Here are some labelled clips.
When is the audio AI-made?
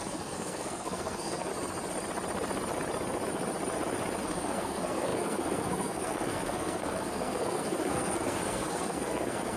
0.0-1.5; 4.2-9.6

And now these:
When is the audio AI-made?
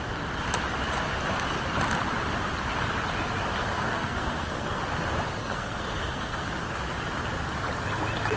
3.6-4.8; 5.4-6.5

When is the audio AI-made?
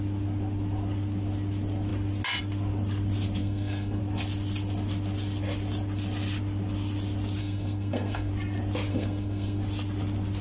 3.4-4.0; 7.4-8.3; 8.9-9.6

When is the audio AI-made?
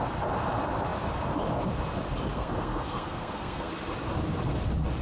2.3-3.7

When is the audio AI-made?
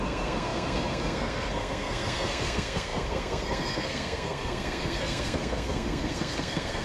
0.0-6.8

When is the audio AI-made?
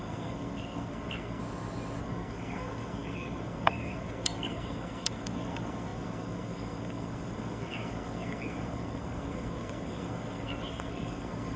0.0-1.4; 2.0-11.6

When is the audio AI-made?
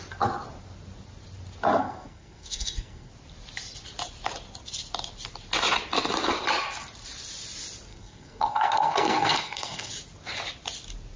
1.8-3.1; 7.9-9.9